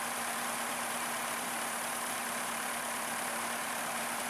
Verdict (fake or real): fake